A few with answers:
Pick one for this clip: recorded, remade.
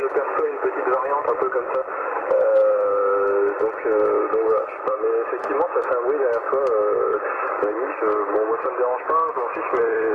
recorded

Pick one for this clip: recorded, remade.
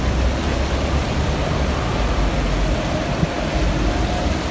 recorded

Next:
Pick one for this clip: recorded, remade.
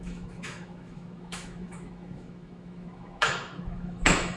remade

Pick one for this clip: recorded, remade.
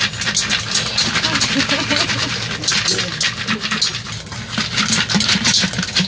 recorded